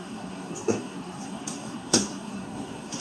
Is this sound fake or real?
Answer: fake